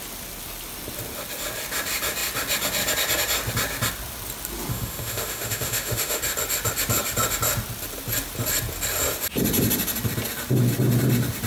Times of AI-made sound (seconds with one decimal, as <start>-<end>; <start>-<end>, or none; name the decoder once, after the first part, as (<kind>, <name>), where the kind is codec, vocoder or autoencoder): 4.7-6.2 (autoencoder, DAC-VAE)